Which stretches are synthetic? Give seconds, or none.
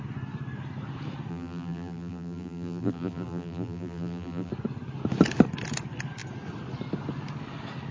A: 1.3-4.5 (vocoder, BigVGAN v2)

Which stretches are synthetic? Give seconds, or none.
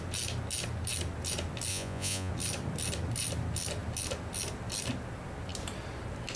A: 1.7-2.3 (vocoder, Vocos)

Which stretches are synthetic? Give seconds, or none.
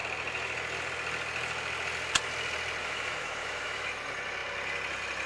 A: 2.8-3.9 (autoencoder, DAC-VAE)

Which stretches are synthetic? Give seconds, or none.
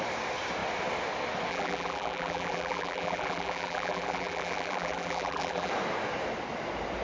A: 1.5-5.7 (vocoder, BigVGAN v2)